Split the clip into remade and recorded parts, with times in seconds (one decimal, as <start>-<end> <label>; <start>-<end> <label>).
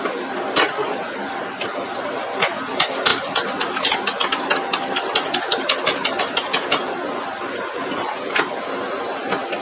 0.0-9.6 recorded